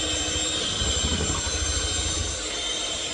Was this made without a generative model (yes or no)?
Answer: no